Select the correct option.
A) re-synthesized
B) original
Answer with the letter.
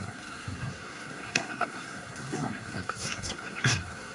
A